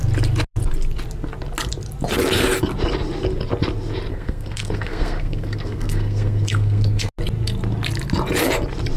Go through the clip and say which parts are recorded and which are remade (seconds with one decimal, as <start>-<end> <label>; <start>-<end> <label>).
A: 0.0-4.1 recorded; 4.1-7.1 remade; 7.1-9.0 recorded